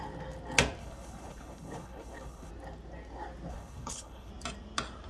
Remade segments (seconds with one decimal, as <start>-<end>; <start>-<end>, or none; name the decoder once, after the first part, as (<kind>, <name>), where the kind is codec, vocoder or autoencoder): 0.8-2.5 (codec, HILCodec); 3.5-4.3